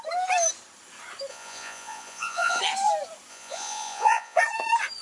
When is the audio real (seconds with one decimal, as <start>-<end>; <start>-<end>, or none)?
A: 0.0-1.3; 2.6-3.3; 4.4-5.0